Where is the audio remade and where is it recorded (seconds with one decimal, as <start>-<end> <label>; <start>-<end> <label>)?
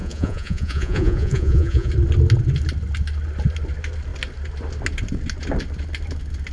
0.0-1.9 remade; 1.9-6.5 recorded